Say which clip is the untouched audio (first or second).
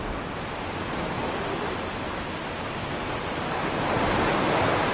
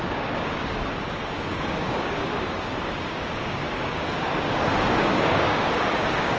first